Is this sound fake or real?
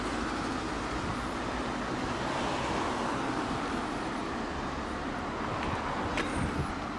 real